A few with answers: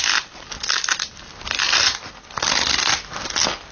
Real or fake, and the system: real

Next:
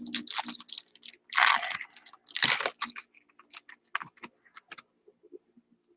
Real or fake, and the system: real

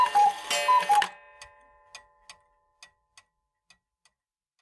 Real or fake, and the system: real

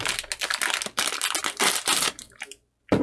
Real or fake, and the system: real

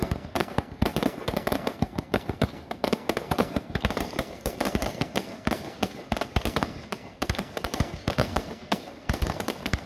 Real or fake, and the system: fake, codec, SNAC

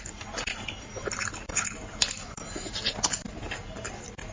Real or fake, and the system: real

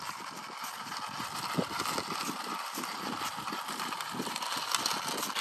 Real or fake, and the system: real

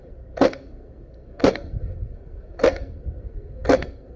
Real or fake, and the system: fake, codec, SNAC